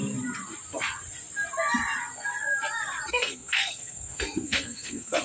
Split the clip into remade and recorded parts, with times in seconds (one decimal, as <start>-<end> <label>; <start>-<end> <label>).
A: 0.0-3.1 recorded; 3.1-5.2 remade